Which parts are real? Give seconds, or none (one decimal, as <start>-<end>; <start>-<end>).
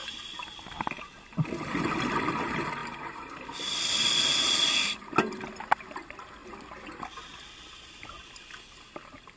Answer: 0.0-9.4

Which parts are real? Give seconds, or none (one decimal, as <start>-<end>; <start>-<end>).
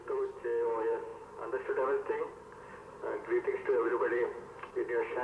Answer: 1.1-2.3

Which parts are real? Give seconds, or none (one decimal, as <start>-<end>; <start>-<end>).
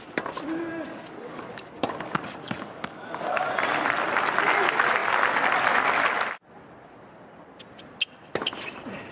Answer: 0.0-0.9; 3.4-9.1